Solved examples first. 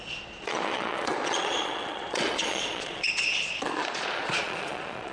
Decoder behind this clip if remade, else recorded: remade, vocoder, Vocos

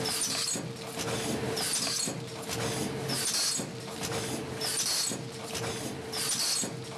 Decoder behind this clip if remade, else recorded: recorded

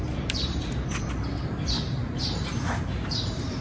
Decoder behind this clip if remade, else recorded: recorded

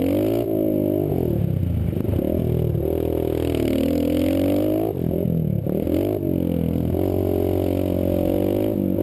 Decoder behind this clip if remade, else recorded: recorded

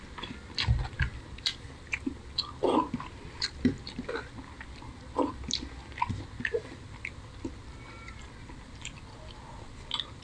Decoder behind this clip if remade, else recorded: recorded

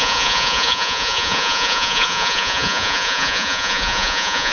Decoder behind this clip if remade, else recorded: remade, vocoder, Vocos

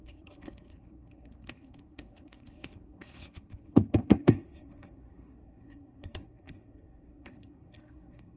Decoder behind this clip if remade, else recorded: remade, codec, SNAC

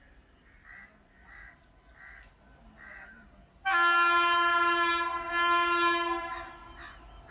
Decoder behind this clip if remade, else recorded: recorded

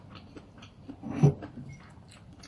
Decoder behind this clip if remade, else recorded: recorded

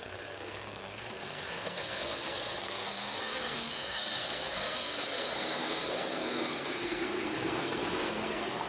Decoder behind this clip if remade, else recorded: remade, codec, SNAC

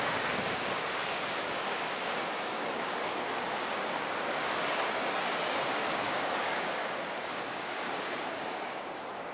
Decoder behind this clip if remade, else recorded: remade, codec, DAC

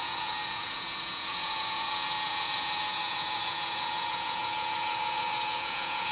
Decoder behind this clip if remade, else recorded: remade, vocoder, Vocos